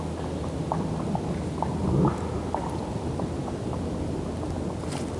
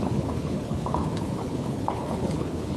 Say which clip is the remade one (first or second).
second